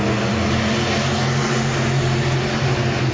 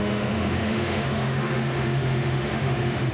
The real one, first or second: first